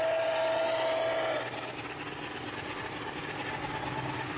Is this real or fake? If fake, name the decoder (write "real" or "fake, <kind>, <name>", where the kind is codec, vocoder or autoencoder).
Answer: real